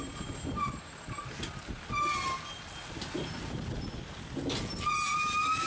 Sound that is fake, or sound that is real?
real